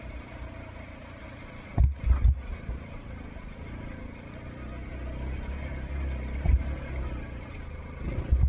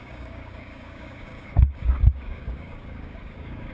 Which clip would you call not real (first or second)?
second